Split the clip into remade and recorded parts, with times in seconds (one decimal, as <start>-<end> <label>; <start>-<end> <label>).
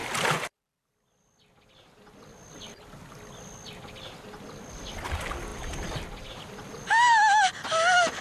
0.0-8.2 recorded